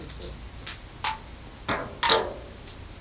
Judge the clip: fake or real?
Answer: real